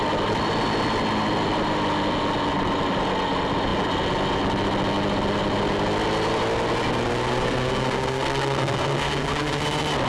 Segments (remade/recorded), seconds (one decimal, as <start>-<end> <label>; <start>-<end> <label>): 0.0-7.3 recorded; 7.3-9.6 remade; 9.6-10.1 recorded